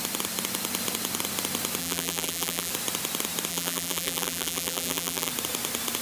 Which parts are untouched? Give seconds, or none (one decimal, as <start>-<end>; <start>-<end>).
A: 0.0-1.8; 2.7-3.5; 5.3-6.0